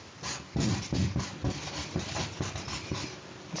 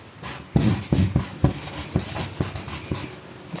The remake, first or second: first